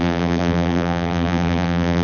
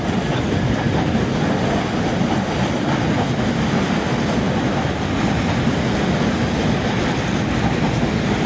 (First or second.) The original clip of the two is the second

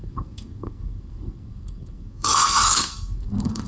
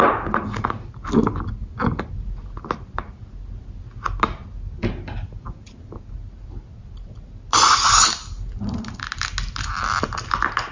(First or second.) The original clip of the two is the second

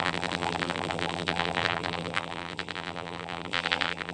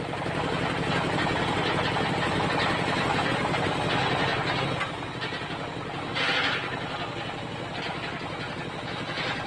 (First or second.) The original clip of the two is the second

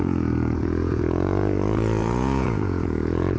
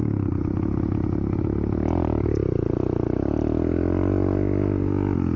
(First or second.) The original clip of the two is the second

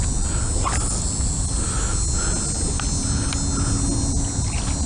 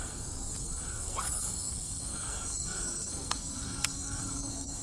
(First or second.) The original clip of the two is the first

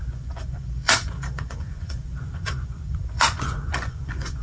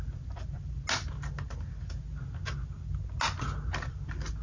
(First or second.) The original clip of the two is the second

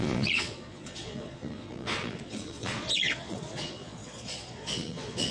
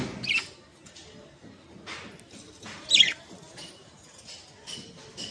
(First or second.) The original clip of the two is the second